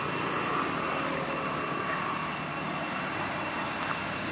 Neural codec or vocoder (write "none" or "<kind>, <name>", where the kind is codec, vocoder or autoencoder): none